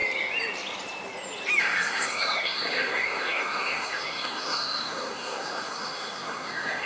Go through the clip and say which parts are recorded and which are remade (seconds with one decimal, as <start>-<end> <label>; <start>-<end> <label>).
0.0-1.6 recorded; 1.6-6.9 remade